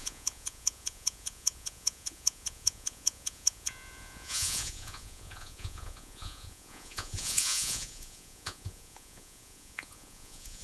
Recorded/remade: remade